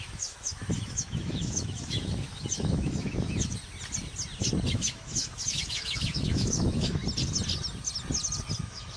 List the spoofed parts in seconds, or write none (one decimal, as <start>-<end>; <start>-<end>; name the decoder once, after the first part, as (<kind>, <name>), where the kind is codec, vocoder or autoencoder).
0.0-3.6 (autoencoder, DAC-VAE); 4.7-7.0; 8.6-9.0